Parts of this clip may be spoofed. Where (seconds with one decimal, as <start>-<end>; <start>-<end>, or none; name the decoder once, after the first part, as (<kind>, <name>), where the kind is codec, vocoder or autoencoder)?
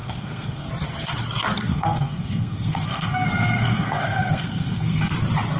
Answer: 0.0-0.7 (codec, SNAC); 1.7-5.1